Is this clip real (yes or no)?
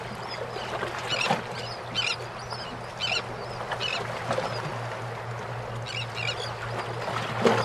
yes